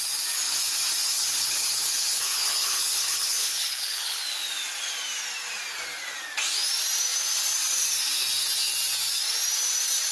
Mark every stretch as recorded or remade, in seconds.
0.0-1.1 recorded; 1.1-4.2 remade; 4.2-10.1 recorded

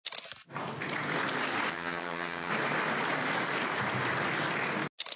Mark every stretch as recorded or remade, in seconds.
0.0-1.7 recorded; 1.7-2.5 remade; 2.5-5.2 recorded

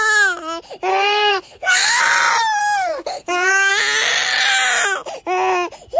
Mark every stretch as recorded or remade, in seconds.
0.0-0.9 recorded; 0.9-2.0 remade; 2.0-2.6 recorded; 2.6-3.7 remade; 3.7-6.0 recorded

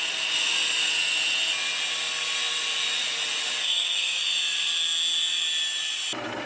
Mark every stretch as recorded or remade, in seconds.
0.0-3.6 recorded; 3.6-4.2 remade; 4.2-6.5 recorded

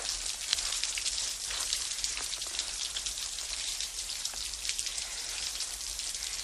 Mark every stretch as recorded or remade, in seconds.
0.0-0.5 recorded; 0.5-4.3 remade; 4.3-4.9 recorded; 4.9-5.7 remade; 5.7-6.4 recorded

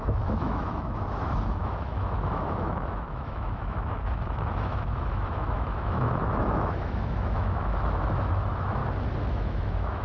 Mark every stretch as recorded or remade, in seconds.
0.0-8.8 remade; 8.8-9.3 recorded; 9.3-10.0 remade